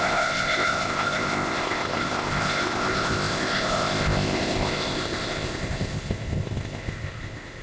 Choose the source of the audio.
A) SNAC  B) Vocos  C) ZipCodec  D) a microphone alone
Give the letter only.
C